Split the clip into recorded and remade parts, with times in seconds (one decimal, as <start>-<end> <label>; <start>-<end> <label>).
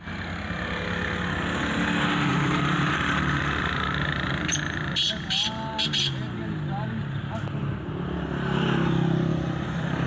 0.0-2.3 recorded; 2.3-5.4 remade; 5.4-9.3 recorded; 9.3-10.1 remade